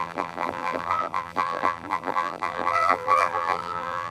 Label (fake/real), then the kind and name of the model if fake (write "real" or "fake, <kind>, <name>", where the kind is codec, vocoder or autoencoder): fake, vocoder, BigVGAN v2